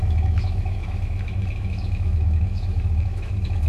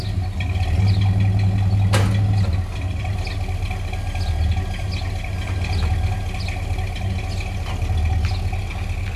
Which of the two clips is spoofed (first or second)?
first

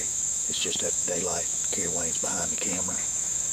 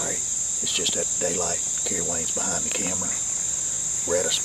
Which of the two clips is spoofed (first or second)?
first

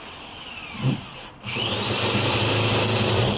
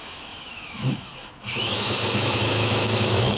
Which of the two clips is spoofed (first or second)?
second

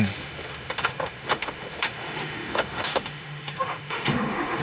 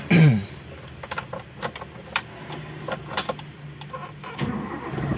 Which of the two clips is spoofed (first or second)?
first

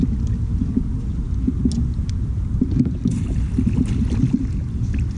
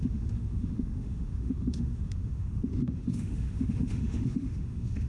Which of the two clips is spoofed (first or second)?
second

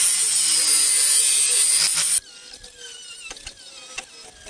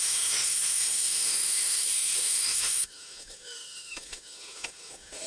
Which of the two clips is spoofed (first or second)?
second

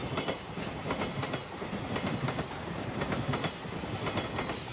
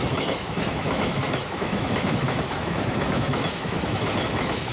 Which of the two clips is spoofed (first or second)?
second